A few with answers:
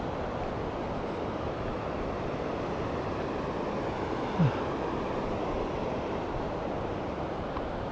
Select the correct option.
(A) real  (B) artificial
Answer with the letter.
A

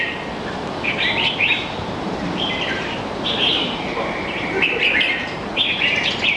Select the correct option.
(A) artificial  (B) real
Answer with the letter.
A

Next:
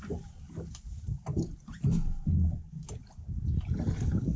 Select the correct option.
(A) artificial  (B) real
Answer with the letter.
B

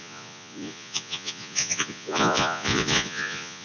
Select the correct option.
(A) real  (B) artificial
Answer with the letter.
B